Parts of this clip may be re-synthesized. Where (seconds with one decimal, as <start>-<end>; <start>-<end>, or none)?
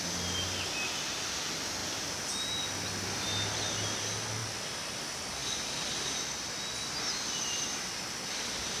1.8-2.3; 4.4-5.0